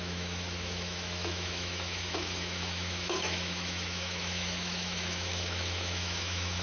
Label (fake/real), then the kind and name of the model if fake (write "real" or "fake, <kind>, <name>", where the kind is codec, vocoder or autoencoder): fake, autoencoder, DAC-VAE